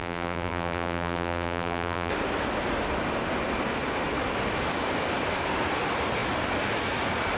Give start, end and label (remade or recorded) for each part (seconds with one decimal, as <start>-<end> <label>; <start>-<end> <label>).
0.0-2.1 remade; 2.1-7.4 recorded